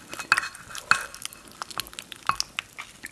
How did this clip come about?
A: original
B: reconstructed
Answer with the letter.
A